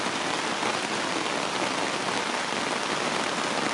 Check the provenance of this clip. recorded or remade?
recorded